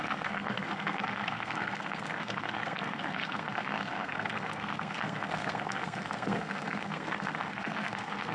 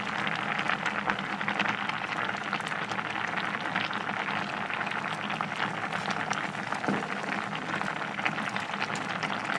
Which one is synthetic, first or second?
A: first